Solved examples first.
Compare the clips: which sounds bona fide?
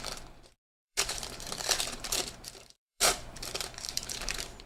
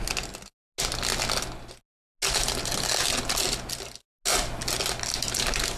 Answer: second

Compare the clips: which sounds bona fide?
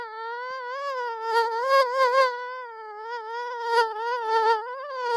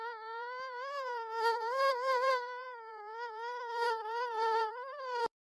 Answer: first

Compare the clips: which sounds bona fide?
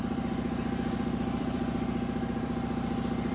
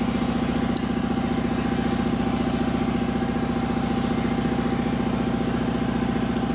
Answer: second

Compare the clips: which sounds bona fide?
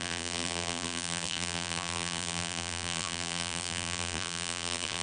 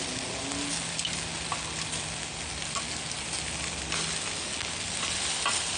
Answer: second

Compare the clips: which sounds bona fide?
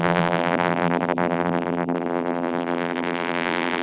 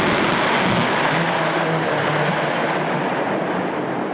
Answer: second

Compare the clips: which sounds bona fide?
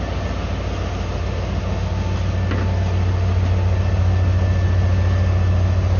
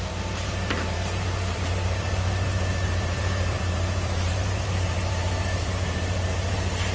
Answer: first